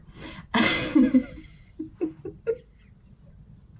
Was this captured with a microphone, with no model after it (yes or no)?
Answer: yes